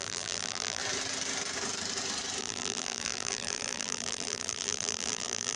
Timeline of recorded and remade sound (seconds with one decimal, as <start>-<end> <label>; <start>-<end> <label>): 0.0-0.8 remade; 0.8-2.4 recorded; 2.4-5.6 remade